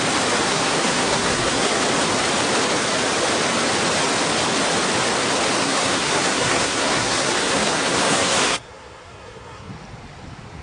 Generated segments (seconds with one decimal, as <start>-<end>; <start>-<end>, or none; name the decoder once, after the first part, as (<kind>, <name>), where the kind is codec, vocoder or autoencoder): 0.4-1.8 (codec, SNAC); 5.6-9.7